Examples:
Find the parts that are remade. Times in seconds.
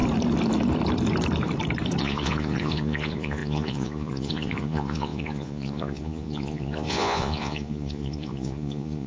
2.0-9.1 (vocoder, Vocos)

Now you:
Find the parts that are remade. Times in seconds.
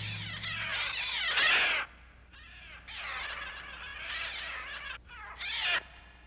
none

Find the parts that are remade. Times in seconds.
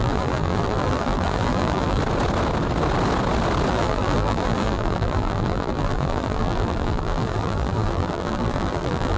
0.0-2.0 (vocoder, BigVGAN v2); 3.7-9.2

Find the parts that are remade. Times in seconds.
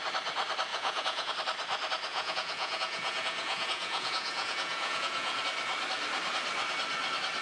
0.7-1.3 (vocoder, Vocos); 2.1-5.4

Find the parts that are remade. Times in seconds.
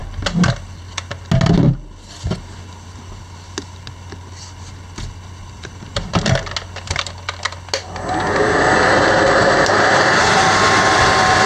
none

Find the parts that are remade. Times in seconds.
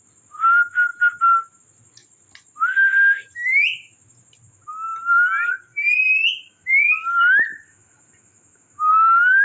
none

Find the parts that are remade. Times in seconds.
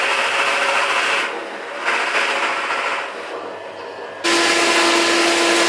none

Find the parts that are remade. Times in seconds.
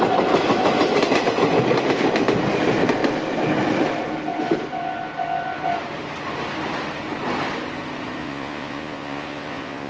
8.2-9.9 (vocoder, Vocos)